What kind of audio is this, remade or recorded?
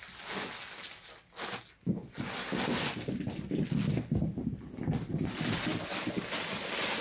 recorded